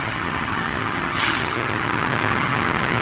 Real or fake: fake